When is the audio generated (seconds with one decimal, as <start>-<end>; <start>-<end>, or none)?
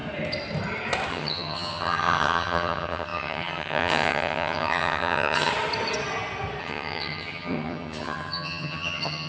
1.1-5.5; 6.6-9.3